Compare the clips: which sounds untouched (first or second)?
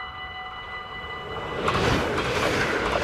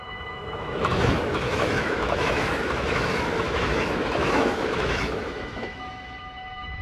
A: first